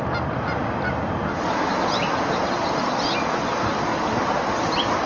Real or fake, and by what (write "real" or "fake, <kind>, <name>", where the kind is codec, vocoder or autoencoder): real